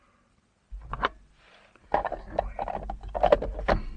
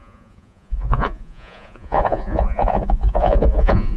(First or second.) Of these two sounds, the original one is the first